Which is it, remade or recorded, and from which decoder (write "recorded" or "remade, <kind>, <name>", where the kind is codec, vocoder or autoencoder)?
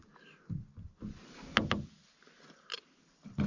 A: recorded